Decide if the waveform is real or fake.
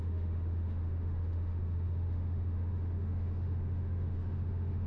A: fake